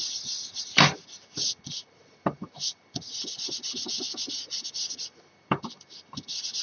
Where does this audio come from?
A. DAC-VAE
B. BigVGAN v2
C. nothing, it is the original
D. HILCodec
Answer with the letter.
B